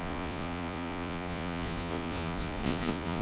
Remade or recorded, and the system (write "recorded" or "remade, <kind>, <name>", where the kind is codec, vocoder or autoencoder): remade, vocoder, Vocos